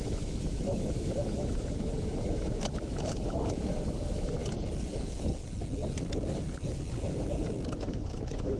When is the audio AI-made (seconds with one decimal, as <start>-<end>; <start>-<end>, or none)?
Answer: 0.0-4.4; 7.7-8.6

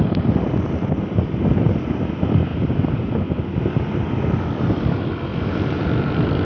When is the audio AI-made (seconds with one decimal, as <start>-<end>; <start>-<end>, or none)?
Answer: 5.3-6.4

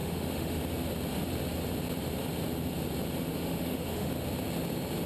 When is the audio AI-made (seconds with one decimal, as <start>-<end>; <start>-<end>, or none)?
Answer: 0.0-0.6; 3.3-4.1